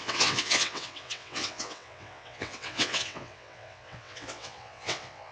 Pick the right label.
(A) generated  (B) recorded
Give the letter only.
A